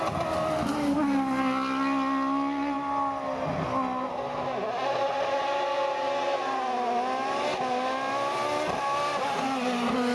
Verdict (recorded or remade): recorded